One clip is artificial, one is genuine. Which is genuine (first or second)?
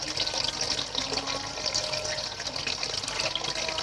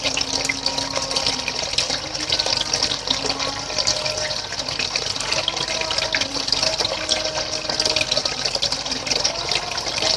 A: first